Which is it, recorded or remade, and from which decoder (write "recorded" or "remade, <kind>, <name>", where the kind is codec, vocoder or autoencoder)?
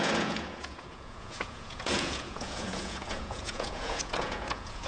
remade, vocoder, Vocos